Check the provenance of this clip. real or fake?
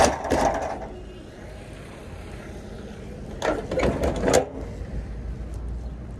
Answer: real